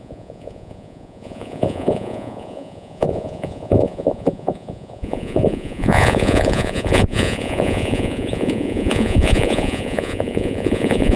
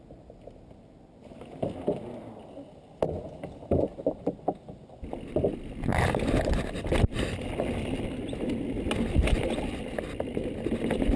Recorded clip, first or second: second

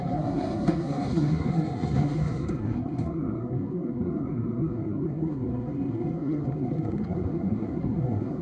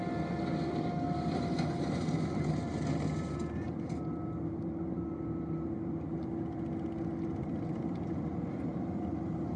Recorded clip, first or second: second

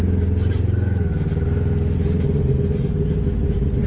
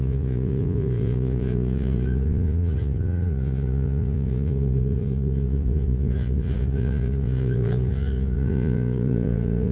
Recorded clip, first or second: first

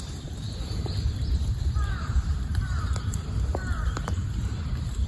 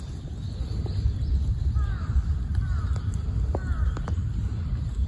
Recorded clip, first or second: second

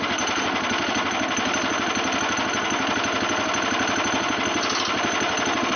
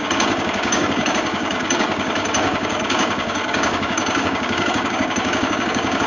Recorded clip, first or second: first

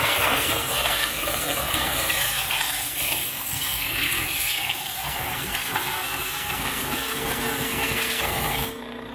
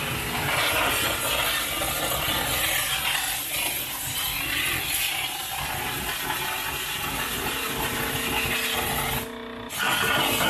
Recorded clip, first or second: second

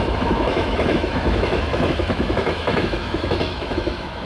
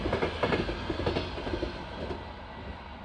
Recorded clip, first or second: second